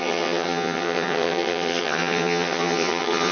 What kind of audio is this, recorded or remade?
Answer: remade